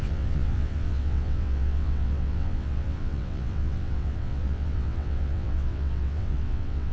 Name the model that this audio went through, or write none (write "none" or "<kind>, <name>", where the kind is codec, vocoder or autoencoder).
vocoder, WaveNeXt